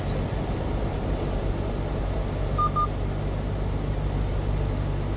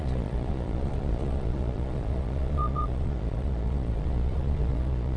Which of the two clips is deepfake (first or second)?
second